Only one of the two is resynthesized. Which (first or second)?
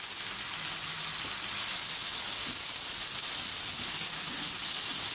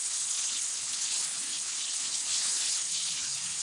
second